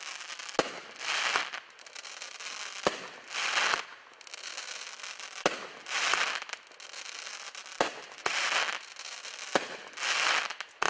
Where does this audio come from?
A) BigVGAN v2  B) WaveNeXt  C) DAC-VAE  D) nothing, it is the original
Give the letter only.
D